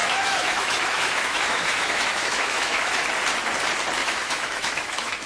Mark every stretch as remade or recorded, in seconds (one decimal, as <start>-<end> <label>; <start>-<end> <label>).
0.0-3.0 remade; 3.0-4.0 recorded; 4.0-5.3 remade

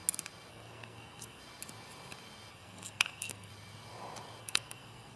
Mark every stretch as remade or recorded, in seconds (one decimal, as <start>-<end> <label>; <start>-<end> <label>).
0.0-0.5 recorded; 0.5-1.4 remade; 1.4-2.5 recorded; 2.5-3.5 remade; 3.5-4.4 recorded; 4.4-5.2 remade

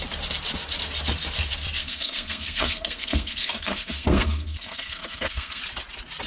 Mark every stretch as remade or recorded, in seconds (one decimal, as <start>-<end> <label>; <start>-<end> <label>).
0.0-1.8 recorded; 1.8-5.6 remade; 5.6-6.3 recorded

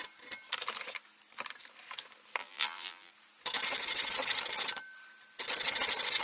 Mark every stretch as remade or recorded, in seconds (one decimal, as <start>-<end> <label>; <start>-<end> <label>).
0.0-2.4 recorded; 2.4-3.1 remade; 3.1-6.2 recorded

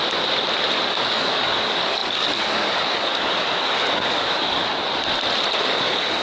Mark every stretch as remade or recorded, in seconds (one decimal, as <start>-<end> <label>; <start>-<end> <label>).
0.0-0.9 recorded; 0.9-4.7 remade; 4.7-5.6 recorded; 5.6-6.2 remade

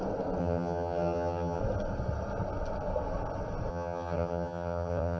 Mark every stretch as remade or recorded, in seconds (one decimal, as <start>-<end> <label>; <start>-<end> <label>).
0.0-0.4 recorded; 0.4-1.6 remade; 1.6-3.7 recorded; 3.7-5.2 remade

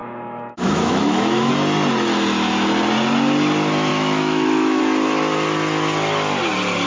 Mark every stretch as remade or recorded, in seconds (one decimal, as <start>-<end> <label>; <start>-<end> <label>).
0.0-1.5 remade; 1.5-3.9 recorded; 3.9-4.8 remade; 4.8-6.9 recorded

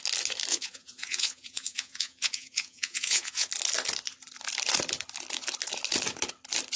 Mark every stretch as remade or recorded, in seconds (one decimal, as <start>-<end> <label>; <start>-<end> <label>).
0.0-0.5 recorded; 0.5-3.5 remade; 3.5-6.8 recorded